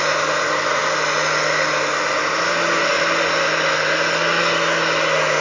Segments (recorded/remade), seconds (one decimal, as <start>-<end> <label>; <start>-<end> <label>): 0.0-5.4 recorded